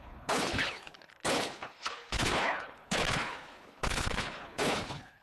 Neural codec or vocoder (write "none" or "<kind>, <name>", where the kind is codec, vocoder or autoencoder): codec, HILCodec